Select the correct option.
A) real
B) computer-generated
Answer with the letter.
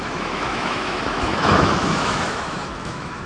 B